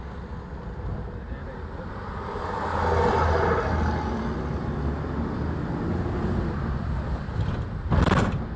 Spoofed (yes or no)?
no